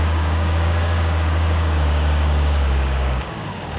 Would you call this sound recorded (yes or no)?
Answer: no